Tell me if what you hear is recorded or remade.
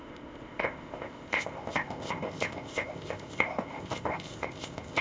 remade